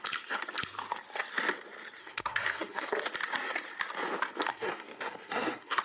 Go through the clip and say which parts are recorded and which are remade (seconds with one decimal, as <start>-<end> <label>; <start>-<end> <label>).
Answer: 0.0-2.0 recorded; 2.0-2.9 remade; 2.9-4.5 recorded; 4.5-5.8 remade